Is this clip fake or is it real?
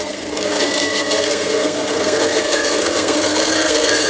fake